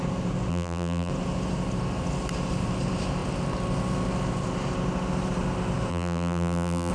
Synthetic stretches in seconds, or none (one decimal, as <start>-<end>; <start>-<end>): 0.5-1.1; 5.9-6.9